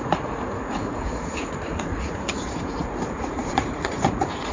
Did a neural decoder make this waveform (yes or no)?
yes